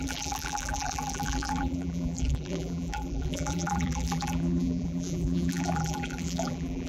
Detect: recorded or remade remade